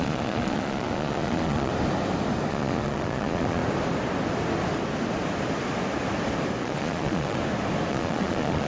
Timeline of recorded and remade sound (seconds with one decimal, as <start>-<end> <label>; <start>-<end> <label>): 0.0-1.7 remade; 1.7-2.5 recorded; 2.5-3.6 remade; 3.6-6.6 recorded; 6.6-7.4 remade; 7.4-7.9 recorded; 7.9-8.7 remade